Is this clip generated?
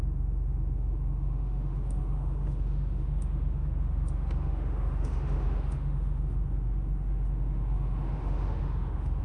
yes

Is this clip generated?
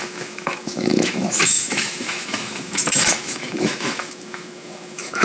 yes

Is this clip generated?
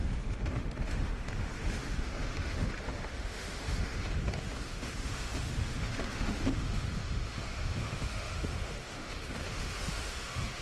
yes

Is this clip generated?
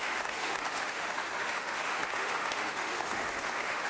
yes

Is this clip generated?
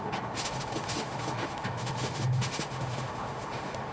yes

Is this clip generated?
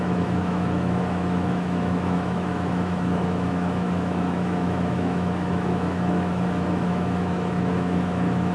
yes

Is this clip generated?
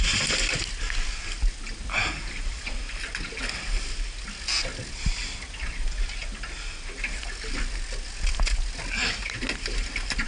no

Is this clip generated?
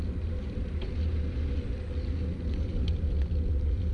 no